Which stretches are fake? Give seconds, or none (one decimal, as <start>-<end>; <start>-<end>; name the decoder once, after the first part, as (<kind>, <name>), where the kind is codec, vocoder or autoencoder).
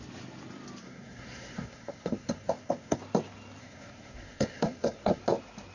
0.8-3.0 (codec, SNAC); 3.6-5.2